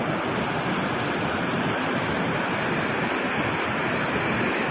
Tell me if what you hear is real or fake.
real